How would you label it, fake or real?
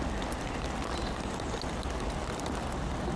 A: real